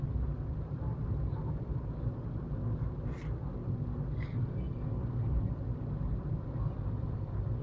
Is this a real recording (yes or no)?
yes